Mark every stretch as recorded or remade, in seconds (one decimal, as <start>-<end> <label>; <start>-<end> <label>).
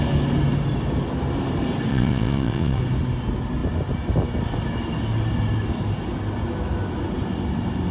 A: 0.0-1.9 recorded; 1.9-2.8 remade; 2.8-7.9 recorded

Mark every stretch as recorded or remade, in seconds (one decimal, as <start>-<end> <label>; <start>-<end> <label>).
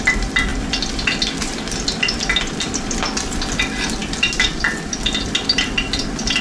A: 0.0-6.4 recorded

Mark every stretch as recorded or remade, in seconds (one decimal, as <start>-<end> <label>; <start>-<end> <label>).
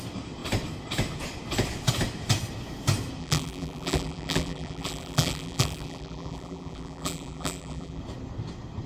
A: 0.0-3.2 recorded; 3.2-8.0 remade; 8.0-8.9 recorded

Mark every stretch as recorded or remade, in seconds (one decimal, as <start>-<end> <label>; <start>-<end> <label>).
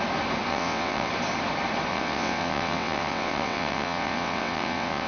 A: 0.0-0.5 recorded; 0.5-1.1 remade; 1.1-1.9 recorded; 1.9-5.1 remade